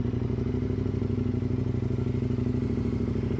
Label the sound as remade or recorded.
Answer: recorded